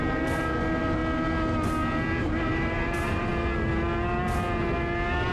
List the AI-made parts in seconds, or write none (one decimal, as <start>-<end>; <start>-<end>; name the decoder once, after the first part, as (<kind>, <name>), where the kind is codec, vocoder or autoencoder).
0.0-1.0 (vocoder, BigVGAN v2); 2.2-3.3